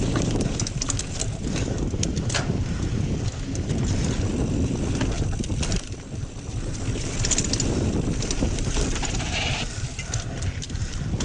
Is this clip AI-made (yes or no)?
no